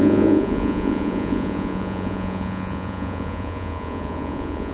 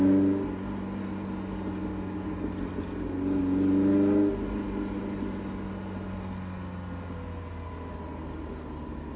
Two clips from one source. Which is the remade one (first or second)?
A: first